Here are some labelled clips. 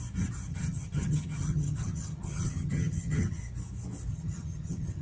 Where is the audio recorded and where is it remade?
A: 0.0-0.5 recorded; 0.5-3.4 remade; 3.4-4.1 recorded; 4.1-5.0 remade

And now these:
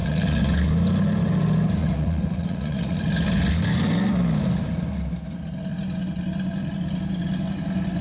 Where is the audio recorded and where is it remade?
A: 0.0-0.5 remade; 0.5-1.8 recorded; 1.8-3.0 remade; 3.0-8.0 recorded

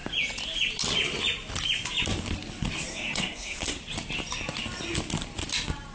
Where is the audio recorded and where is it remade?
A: 0.0-2.9 recorded; 2.9-3.8 remade; 3.8-5.9 recorded

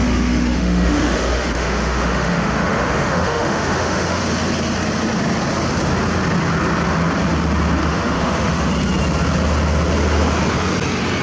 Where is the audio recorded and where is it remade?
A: 0.0-4.2 remade; 4.2-7.8 recorded; 7.8-8.7 remade; 8.7-11.2 recorded